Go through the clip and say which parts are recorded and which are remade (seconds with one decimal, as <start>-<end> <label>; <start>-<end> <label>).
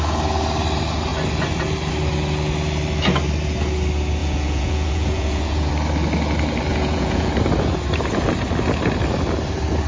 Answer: 0.0-4.2 recorded; 4.2-5.7 remade; 5.7-6.7 recorded; 6.7-7.3 remade; 7.3-9.9 recorded